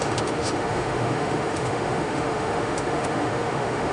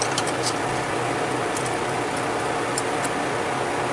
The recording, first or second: second